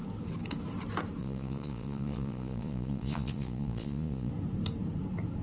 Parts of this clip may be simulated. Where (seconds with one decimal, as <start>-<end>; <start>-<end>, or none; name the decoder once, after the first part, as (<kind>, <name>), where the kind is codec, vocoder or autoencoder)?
1.2-4.3 (vocoder, Vocos)